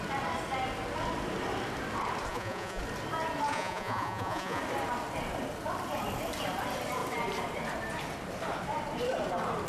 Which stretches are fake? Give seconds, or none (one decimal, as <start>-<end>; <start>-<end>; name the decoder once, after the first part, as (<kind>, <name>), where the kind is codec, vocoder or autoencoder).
2.3-2.8 (vocoder, Vocos); 3.5-4.6